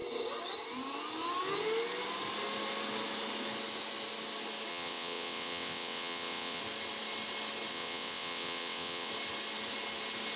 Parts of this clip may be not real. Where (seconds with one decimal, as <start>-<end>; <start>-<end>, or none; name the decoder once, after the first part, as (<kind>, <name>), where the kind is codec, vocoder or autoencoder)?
4.7-6.6 (vocoder, WaveNeXt); 7.7-9.1